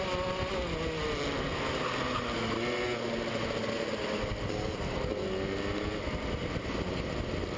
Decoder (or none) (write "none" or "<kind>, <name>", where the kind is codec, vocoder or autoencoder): none